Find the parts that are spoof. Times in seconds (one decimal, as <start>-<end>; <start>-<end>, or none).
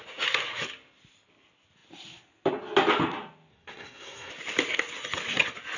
3.5-4.3